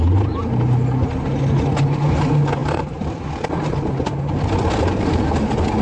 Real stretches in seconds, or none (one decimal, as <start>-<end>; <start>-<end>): 0.0-2.6; 3.2-5.8